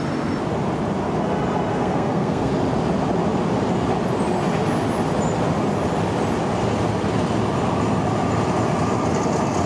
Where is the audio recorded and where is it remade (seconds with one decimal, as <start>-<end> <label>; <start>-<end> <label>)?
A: 0.0-1.7 recorded; 1.7-2.5 remade; 2.5-9.7 recorded